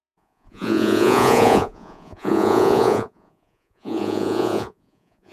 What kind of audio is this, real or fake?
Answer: fake